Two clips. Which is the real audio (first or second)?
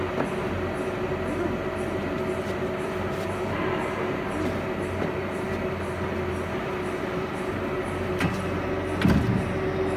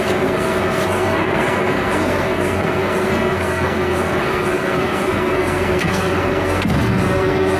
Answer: first